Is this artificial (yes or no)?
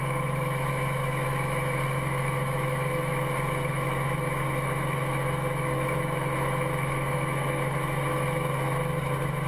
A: yes